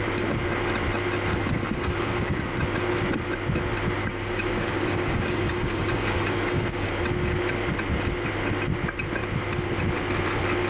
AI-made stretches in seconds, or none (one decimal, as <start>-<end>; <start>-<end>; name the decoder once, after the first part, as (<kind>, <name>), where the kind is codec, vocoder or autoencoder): 1.3-2.4 (codec, DAC); 4.0-6.9